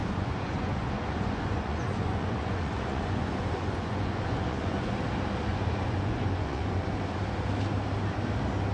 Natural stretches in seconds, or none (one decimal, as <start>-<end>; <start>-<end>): 4.9-5.5; 6.9-8.7